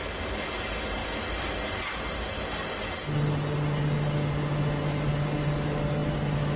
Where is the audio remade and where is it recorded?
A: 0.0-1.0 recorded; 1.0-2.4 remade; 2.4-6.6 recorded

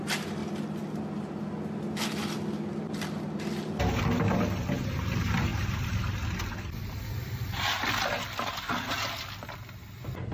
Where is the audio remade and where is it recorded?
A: 0.0-10.3 recorded

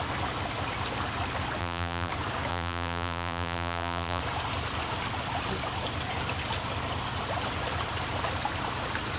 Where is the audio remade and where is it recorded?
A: 0.0-1.6 recorded; 1.6-2.1 remade; 2.1-2.5 recorded; 2.5-4.2 remade; 4.2-9.2 recorded

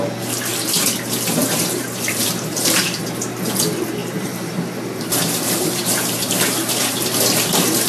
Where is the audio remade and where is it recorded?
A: 0.0-1.4 recorded; 1.4-3.0 remade; 3.0-4.0 recorded; 4.0-6.8 remade; 6.8-7.9 recorded

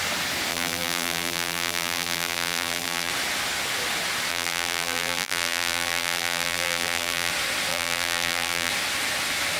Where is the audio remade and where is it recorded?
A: 0.0-0.5 recorded; 0.5-3.1 remade; 3.1-4.3 recorded; 4.3-7.3 remade; 7.3-7.7 recorded; 7.7-8.7 remade; 8.7-9.6 recorded

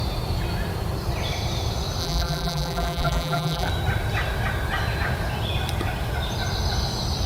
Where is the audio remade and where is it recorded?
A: 0.0-2.0 recorded; 2.0-3.7 remade; 3.7-7.3 recorded

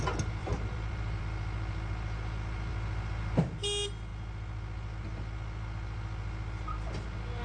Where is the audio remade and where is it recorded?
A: 0.0-0.4 recorded; 0.4-1.2 remade; 1.2-7.4 recorded